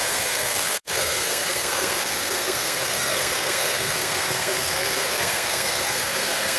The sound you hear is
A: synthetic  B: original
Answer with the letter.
A